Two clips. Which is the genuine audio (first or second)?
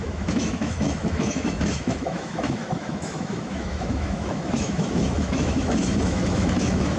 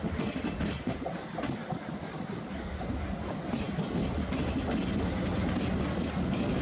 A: second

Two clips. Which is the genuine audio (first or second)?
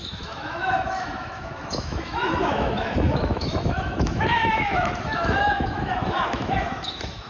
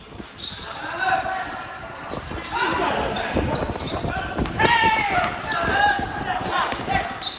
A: second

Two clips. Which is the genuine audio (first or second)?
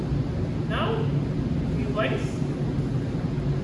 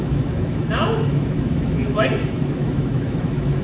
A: first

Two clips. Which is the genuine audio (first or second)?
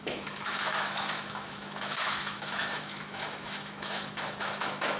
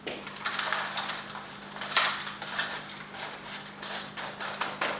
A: second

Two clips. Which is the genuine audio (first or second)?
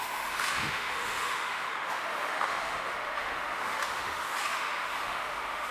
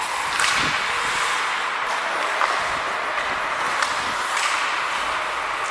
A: second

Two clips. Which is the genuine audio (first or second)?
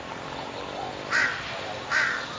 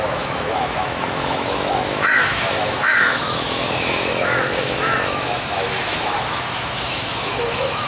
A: first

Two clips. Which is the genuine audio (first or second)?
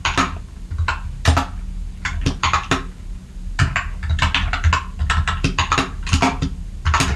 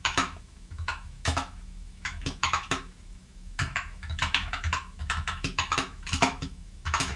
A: first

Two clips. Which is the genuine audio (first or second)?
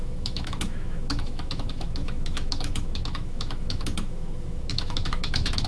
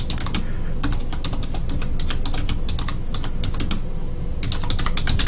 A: second